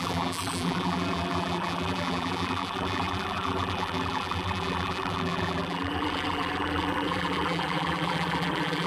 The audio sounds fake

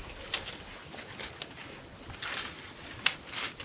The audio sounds real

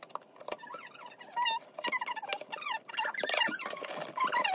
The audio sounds real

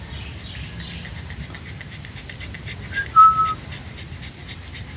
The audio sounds real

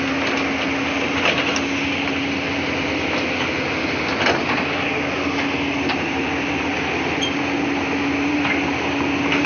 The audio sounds real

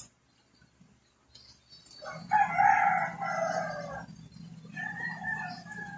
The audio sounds real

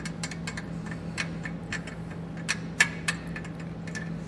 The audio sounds real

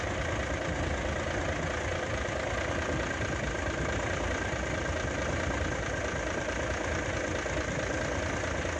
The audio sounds real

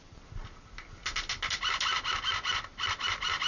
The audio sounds real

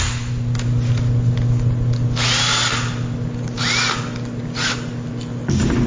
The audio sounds real